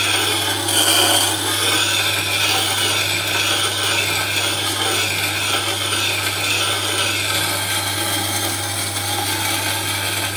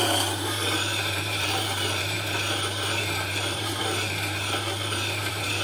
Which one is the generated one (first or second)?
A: second